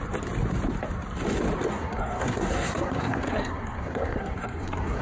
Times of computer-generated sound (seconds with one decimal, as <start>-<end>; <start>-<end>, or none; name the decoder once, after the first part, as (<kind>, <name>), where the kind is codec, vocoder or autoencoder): 1.7-5.0 (codec, SNAC)